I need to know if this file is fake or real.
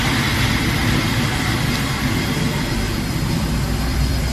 fake